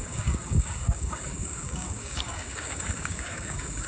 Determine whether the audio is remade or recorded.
remade